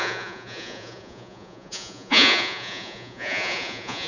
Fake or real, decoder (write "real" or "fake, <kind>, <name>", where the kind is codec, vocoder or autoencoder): fake, vocoder, Vocos